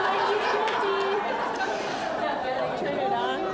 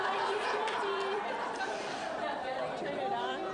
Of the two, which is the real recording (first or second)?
first